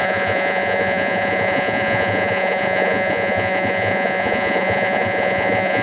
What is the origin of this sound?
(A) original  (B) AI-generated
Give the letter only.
B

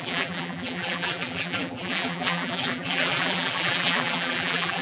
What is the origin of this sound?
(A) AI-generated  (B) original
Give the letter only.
A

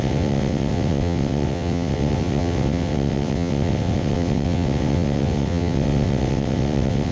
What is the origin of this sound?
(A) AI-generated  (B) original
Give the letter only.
A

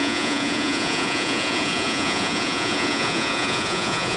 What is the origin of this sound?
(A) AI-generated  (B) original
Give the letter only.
A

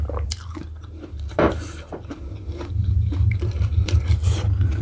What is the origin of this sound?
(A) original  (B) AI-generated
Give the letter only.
B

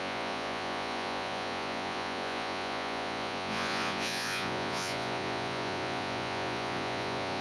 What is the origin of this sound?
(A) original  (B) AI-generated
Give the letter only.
B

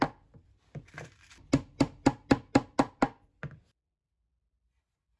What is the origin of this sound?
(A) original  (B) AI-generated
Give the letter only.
A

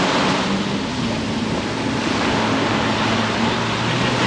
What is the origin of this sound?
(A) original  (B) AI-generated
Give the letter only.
A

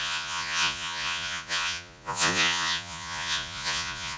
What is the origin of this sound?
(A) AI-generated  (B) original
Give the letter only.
A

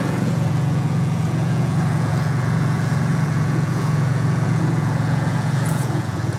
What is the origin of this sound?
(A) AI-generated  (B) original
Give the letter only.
A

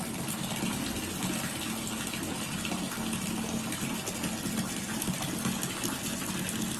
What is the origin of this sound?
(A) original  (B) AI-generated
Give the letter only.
A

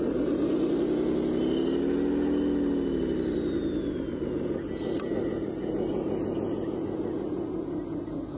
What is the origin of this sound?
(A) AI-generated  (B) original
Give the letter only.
B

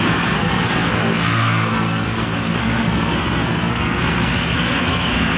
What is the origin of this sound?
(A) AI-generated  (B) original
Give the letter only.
A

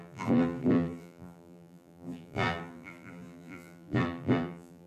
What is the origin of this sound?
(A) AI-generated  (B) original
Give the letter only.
A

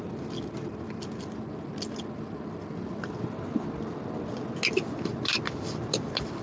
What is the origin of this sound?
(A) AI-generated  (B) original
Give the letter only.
B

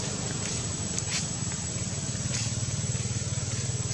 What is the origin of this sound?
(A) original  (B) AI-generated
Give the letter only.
A